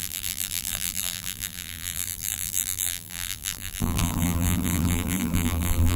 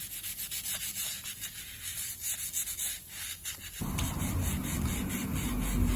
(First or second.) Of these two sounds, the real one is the second